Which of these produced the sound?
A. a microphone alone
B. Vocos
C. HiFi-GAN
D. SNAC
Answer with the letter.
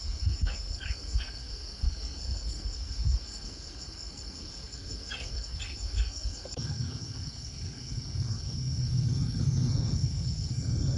D